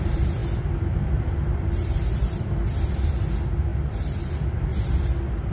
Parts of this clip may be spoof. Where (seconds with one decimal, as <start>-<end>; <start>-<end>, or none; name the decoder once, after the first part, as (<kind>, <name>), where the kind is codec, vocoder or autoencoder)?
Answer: 0.0-0.4 (vocoder, BigVGAN v2); 1.3-2.2; 2.8-3.7; 4.3-4.7